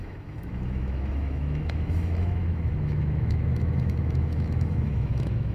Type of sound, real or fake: fake